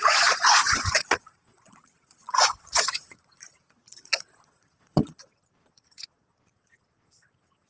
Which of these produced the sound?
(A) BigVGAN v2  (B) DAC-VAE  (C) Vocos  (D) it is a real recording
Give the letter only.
C